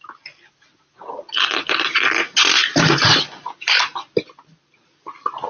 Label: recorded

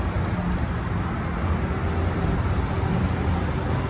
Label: recorded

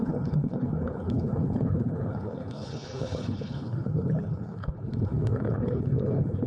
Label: remade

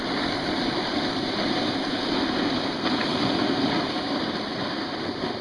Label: recorded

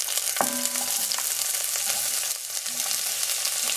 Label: recorded